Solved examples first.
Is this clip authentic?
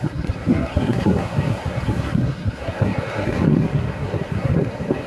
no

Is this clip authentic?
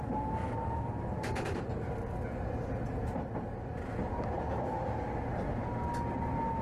yes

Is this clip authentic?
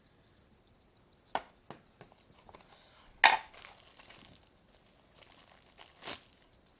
yes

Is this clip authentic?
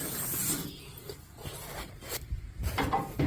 no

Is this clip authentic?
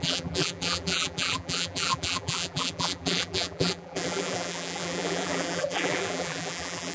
no